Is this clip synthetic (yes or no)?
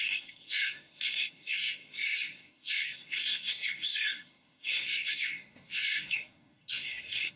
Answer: yes